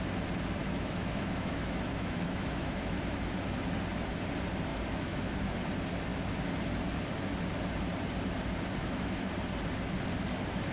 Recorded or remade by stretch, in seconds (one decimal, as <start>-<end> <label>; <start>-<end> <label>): 0.0-0.6 recorded; 0.6-3.2 remade; 3.2-4.7 recorded; 4.7-5.3 remade; 5.3-8.8 recorded; 8.8-9.3 remade; 9.3-10.7 recorded